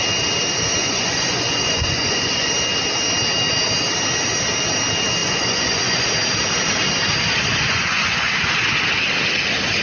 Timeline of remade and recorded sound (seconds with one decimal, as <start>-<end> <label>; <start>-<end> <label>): 0.0-0.8 recorded; 0.8-2.5 remade; 2.5-5.2 recorded; 5.2-6.1 remade; 6.1-7.5 recorded; 7.5-8.3 remade; 8.3-9.8 recorded